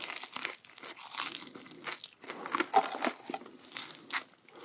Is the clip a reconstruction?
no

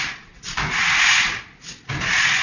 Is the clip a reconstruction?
no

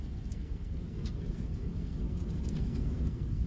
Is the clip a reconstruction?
yes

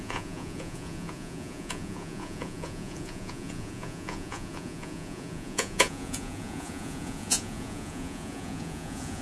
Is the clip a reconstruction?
yes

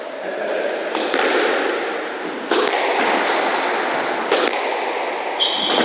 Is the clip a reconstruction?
no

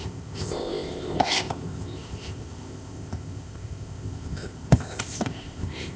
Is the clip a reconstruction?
yes